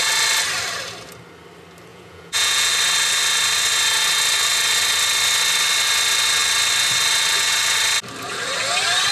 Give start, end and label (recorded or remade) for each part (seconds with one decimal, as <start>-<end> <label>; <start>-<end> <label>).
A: 0.0-1.9 recorded; 1.9-2.7 remade; 2.7-9.1 recorded